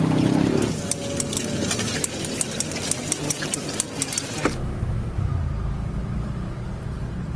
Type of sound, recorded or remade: recorded